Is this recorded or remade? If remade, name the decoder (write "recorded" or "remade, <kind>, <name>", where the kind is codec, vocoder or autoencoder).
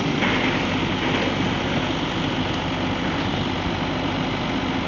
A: recorded